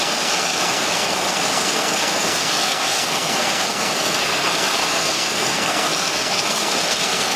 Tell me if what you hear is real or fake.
fake